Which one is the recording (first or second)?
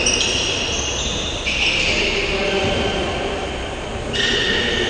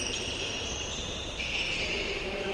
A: first